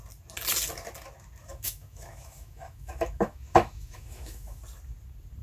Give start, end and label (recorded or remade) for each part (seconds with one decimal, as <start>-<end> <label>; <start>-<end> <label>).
0.0-1.4 recorded; 1.4-4.6 remade; 4.6-5.4 recorded